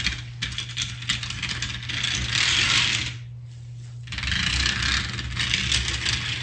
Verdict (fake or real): real